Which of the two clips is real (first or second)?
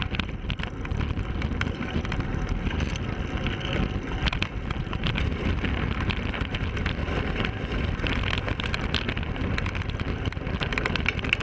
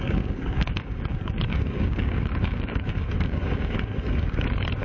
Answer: first